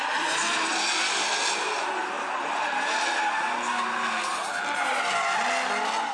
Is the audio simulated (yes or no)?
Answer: no